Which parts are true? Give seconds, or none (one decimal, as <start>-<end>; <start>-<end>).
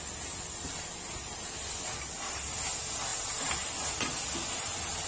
0.0-5.1